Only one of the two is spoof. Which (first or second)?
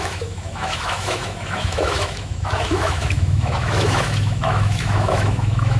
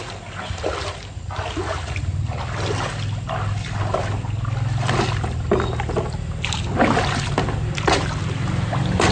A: first